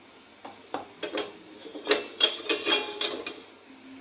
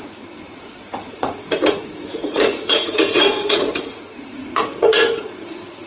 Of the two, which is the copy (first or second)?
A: second